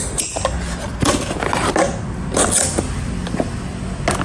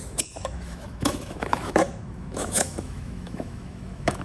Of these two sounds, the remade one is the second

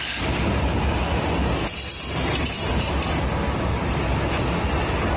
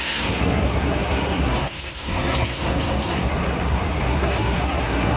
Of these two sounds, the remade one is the second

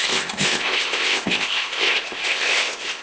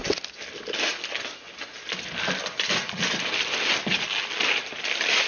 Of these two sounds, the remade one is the first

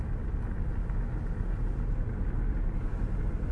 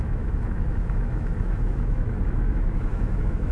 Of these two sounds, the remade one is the second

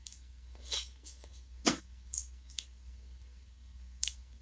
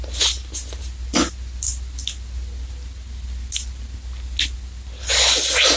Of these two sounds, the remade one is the first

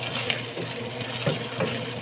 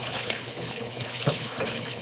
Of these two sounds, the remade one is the second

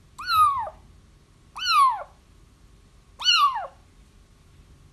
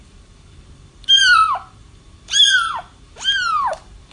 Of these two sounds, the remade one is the second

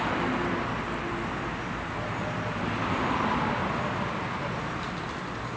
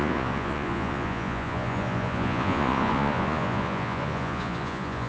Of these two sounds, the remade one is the second